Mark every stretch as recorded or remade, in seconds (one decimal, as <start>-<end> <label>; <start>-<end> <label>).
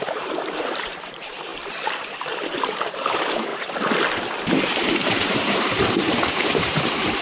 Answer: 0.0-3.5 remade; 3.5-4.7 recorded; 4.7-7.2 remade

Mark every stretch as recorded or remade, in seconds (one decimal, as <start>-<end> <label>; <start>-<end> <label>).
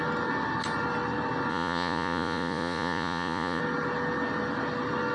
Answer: 0.0-1.5 recorded; 1.5-3.6 remade; 3.6-5.1 recorded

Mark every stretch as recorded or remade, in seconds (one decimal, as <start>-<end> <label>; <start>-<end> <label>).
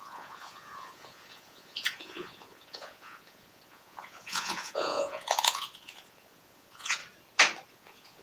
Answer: 0.0-7.0 remade; 7.0-7.7 recorded; 7.7-8.2 remade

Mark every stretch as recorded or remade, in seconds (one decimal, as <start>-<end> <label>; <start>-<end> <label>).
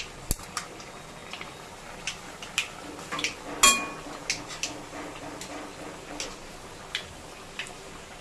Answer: 0.0-8.2 recorded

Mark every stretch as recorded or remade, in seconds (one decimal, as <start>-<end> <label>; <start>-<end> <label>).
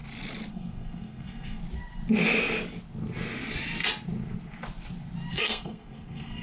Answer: 0.0-0.5 recorded; 0.5-1.6 remade; 1.6-5.3 recorded; 5.3-6.4 remade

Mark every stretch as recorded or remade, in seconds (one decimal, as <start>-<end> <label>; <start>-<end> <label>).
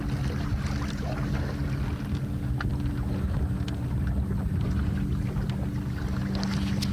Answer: 0.0-6.9 recorded